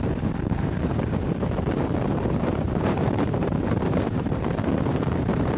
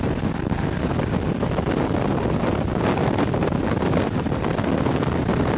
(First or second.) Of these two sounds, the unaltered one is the second